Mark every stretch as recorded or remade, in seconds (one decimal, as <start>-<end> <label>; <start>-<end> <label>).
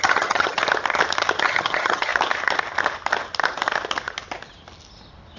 0.0-0.6 remade; 0.6-1.4 recorded; 1.4-2.1 remade; 2.1-5.4 recorded